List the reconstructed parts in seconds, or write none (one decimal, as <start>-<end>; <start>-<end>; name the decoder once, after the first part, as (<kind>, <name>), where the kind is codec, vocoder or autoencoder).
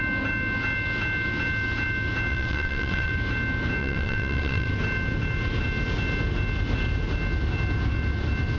2.3-3.1 (vocoder, WaveNeXt); 3.8-4.7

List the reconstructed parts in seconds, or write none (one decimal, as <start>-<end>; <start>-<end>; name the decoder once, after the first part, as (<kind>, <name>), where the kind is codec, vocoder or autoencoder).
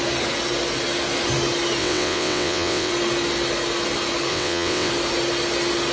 1.8-2.9 (vocoder, WaveNeXt); 4.3-4.9